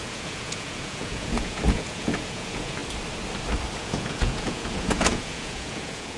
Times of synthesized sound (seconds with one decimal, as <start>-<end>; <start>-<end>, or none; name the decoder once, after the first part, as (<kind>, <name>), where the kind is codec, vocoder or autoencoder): 0.0-2.8 (vocoder, Vocos); 3.8-6.2